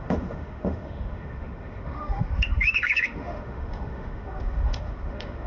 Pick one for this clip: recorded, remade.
remade